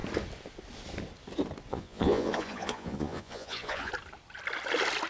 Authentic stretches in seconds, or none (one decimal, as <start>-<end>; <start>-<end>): 0.0-1.7; 3.9-5.1